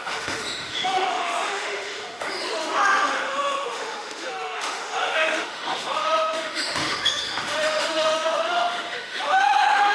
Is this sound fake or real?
fake